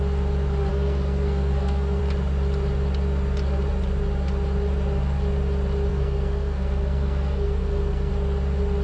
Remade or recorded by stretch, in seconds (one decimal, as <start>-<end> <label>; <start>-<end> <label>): 0.0-0.7 recorded; 0.7-2.0 remade; 2.0-5.9 recorded; 5.9-8.1 remade; 8.1-8.8 recorded